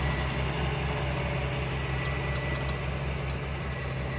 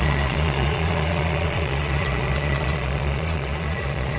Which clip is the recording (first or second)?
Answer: first